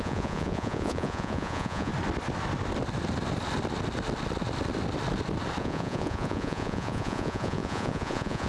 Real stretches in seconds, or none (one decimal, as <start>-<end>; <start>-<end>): 1.9-5.6